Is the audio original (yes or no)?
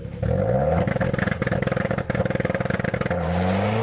yes